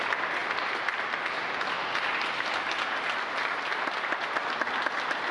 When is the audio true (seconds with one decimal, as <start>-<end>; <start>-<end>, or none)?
0.0-5.3

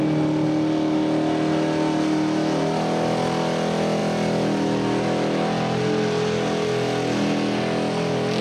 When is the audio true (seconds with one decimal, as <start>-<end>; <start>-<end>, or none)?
0.0-8.4